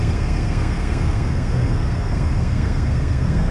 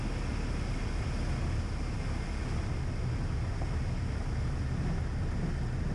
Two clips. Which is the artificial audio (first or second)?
first